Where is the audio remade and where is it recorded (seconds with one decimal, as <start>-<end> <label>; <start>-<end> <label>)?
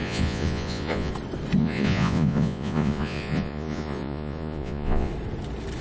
0.0-1.1 remade; 1.1-1.6 recorded; 1.6-5.1 remade; 5.1-5.8 recorded